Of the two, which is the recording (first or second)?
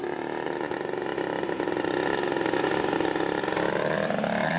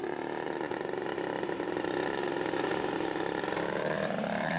first